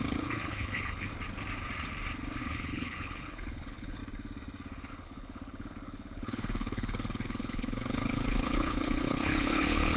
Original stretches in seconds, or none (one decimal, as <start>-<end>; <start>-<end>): 1.1-2.4; 4.0-4.9